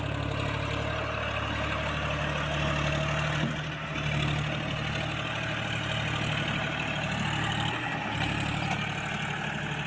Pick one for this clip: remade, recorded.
recorded